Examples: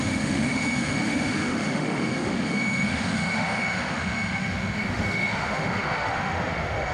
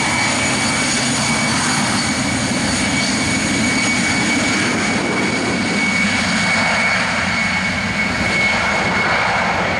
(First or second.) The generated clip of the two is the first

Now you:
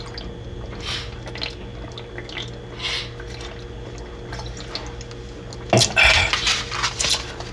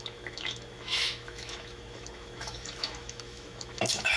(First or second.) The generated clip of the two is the second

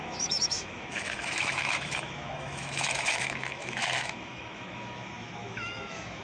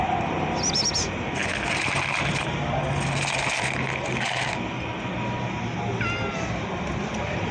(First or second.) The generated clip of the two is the first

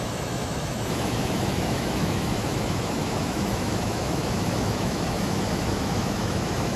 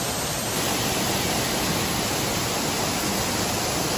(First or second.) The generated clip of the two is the first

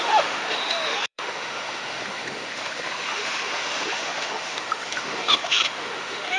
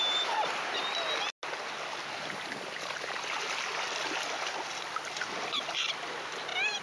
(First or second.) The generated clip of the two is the first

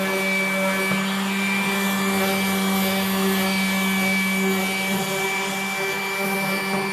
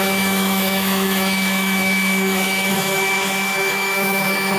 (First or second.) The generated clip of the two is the second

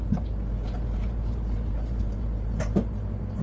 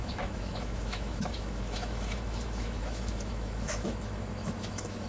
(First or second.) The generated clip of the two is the second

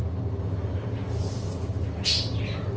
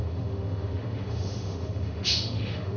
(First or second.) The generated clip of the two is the second